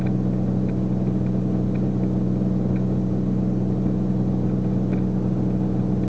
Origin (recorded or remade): recorded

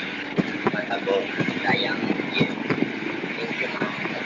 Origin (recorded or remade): recorded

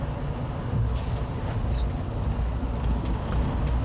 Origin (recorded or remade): recorded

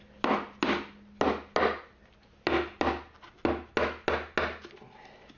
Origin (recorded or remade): recorded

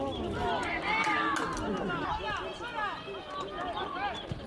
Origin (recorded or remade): recorded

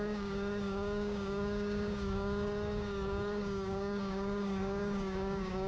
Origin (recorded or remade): remade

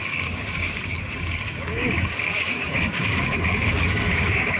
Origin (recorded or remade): remade